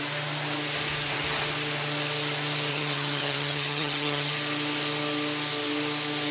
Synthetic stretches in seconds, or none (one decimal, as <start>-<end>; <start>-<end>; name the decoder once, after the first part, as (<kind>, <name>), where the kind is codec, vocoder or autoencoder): 2.7-4.3 (vocoder, HiFi-GAN)